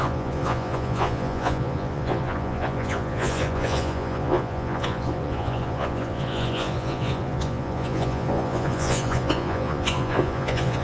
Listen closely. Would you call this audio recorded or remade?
remade